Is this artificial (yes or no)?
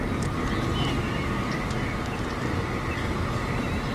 no